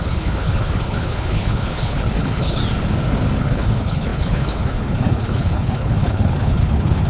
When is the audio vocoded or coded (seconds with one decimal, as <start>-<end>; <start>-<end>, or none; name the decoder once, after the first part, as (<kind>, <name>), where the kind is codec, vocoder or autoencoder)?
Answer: 0.0-2.6 (codec, HILCodec); 3.4-7.1